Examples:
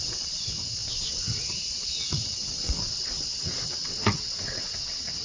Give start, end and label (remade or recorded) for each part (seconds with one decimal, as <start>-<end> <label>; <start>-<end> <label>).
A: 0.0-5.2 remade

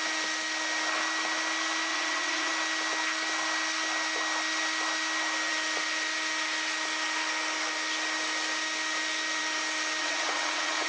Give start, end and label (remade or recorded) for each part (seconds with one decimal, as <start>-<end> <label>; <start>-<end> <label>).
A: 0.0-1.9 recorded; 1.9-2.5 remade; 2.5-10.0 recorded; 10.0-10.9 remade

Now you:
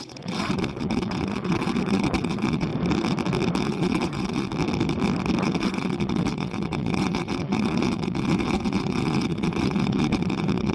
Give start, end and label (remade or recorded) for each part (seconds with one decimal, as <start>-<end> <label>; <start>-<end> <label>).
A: 0.0-2.7 remade; 2.7-3.6 recorded; 3.6-4.5 remade; 4.5-5.4 recorded; 5.4-10.7 remade

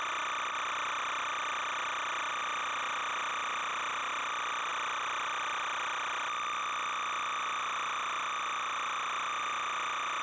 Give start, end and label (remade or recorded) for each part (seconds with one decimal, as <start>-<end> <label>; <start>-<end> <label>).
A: 0.0-10.2 recorded